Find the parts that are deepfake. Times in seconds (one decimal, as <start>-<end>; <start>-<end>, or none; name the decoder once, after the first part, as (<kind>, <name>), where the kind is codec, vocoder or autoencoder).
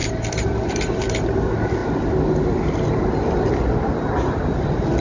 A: none